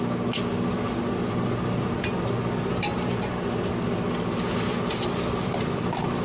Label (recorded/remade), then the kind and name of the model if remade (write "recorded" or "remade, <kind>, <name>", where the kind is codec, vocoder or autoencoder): recorded